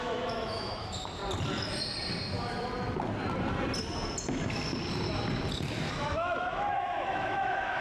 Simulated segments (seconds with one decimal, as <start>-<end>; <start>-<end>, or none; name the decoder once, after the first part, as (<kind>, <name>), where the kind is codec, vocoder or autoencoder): 0.0-1.2 (autoencoder, DAC-VAE); 5.9-7.8